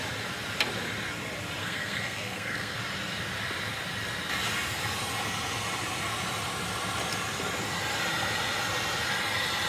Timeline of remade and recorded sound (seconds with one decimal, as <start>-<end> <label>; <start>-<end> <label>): 0.0-1.6 recorded; 1.6-2.8 remade; 2.8-9.7 recorded